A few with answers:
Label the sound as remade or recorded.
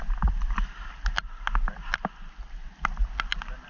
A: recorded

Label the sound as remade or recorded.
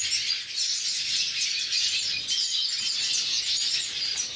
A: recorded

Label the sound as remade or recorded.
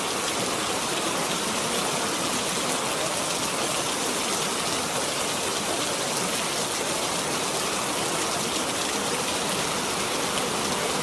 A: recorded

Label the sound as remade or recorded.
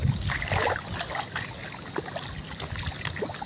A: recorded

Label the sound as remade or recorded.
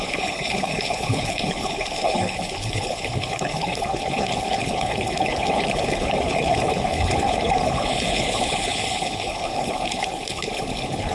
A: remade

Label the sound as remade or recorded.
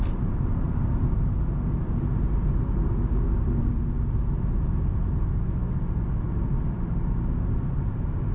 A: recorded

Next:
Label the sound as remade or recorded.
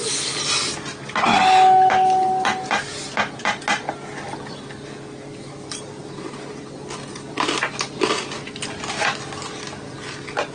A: recorded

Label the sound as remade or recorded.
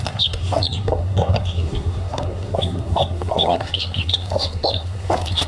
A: remade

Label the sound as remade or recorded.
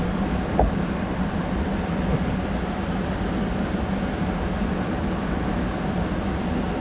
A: recorded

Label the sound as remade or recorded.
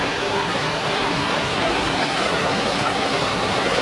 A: remade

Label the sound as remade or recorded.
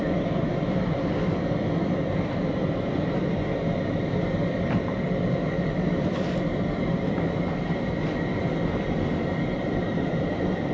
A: remade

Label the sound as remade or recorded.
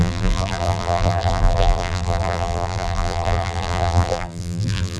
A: remade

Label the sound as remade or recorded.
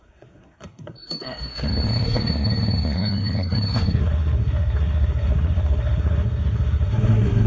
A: remade